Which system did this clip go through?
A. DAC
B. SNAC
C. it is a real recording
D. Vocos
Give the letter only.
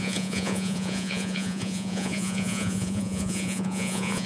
D